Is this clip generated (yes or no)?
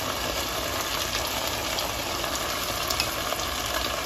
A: no